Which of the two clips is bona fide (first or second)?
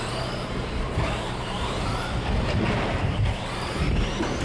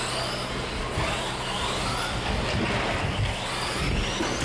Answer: second